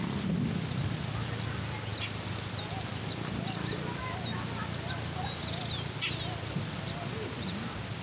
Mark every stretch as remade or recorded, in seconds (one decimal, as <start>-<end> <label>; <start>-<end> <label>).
0.0-8.0 recorded

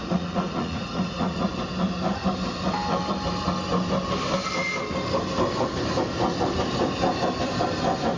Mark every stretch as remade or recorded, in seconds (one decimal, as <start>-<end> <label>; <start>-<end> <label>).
0.0-1.5 remade; 1.5-8.2 recorded

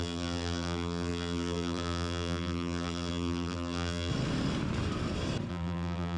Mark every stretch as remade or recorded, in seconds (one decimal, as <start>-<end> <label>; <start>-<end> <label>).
0.0-4.1 remade; 4.1-5.5 recorded; 5.5-6.2 remade

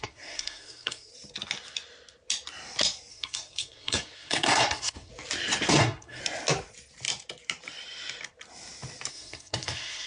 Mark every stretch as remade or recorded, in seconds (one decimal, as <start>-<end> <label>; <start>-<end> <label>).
0.0-1.1 remade; 1.1-3.1 recorded; 3.1-5.1 remade; 5.1-5.7 recorded; 5.7-6.2 remade; 6.2-9.1 recorded; 9.1-10.1 remade

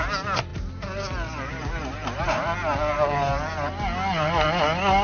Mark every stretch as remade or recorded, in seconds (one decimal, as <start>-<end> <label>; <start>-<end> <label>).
0.0-0.5 recorded; 0.5-3.5 remade; 3.5-5.0 recorded